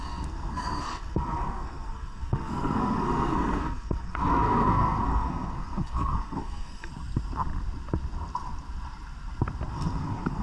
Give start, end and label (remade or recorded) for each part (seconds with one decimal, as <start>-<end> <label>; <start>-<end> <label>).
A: 0.0-6.9 remade; 6.9-9.7 recorded; 9.7-10.4 remade

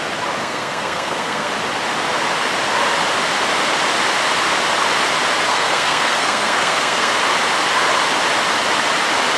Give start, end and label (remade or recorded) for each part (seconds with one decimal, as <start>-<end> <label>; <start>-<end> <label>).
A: 0.0-0.4 recorded; 0.4-1.5 remade; 1.5-5.5 recorded; 5.5-7.1 remade; 7.1-9.4 recorded

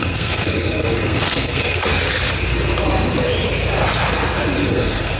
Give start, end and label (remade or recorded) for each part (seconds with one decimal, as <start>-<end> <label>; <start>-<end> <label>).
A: 0.0-1.9 remade; 1.9-4.7 recorded; 4.7-5.2 remade

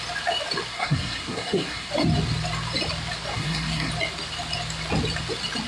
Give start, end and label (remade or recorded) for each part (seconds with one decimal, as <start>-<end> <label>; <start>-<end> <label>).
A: 0.0-0.7 recorded; 0.7-1.9 remade; 1.9-3.3 recorded; 3.3-3.9 remade; 3.9-5.7 recorded

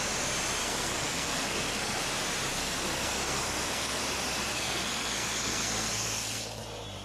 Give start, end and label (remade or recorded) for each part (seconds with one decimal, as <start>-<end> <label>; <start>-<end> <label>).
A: 0.0-0.6 recorded; 0.6-2.0 remade; 2.0-2.5 recorded; 2.5-4.0 remade; 4.0-4.5 recorded; 4.5-6.6 remade; 6.6-7.0 recorded

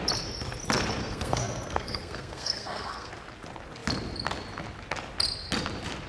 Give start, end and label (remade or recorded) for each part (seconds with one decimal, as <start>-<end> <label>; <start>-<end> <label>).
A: 0.0-1.0 recorded; 1.0-3.1 remade; 3.1-6.1 recorded

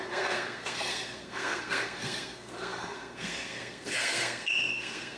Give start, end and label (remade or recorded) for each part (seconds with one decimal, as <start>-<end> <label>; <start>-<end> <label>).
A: 0.0-5.2 remade

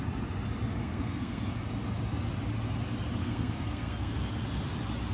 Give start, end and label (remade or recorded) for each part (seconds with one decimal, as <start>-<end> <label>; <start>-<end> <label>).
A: 0.0-0.8 recorded; 0.8-1.4 remade; 1.4-3.2 recorded; 3.2-4.1 remade; 4.1-5.1 recorded